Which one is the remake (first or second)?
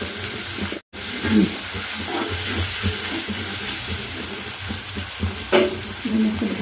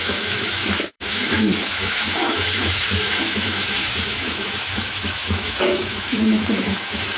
second